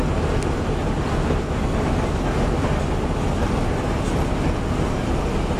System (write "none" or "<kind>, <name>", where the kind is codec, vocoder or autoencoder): none